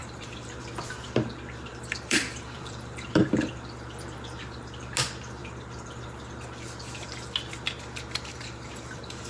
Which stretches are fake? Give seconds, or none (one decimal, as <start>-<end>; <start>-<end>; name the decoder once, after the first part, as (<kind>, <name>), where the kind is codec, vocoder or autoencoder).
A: 0.0-0.6 (vocoder, BigVGAN v2); 1.7-3.5; 8.3-9.3